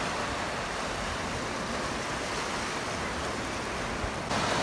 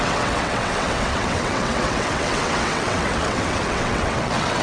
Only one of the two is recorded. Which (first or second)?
first